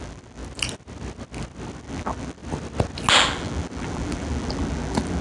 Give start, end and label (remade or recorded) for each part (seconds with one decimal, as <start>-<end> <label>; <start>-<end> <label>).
0.0-0.4 remade; 0.4-1.8 recorded; 1.8-2.4 remade; 2.4-3.1 recorded; 3.1-5.2 remade